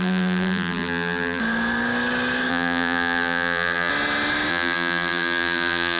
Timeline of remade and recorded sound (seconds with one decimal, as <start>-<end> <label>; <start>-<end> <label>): 0.0-1.4 remade; 1.4-2.5 recorded; 2.5-3.9 remade; 3.9-4.5 recorded; 4.5-6.0 remade